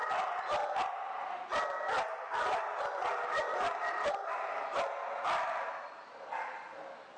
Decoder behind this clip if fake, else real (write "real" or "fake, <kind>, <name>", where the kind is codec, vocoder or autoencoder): real